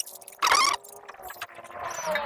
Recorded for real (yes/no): yes